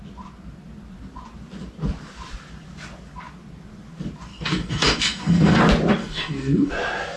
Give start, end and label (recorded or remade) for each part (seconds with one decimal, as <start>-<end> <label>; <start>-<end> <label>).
0.0-4.3 recorded; 4.3-5.6 remade; 5.6-6.0 recorded; 6.0-6.7 remade; 6.7-7.2 recorded

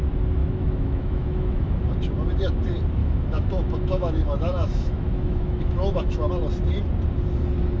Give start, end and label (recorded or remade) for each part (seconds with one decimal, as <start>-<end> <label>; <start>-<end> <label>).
0.0-0.4 recorded; 0.4-1.8 remade; 1.8-3.0 recorded; 3.0-6.3 remade; 6.3-7.8 recorded